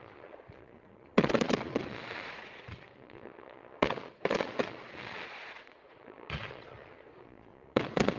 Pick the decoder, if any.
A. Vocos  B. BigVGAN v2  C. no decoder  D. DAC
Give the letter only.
A